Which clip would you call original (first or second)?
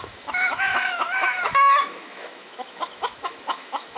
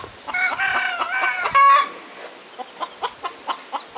second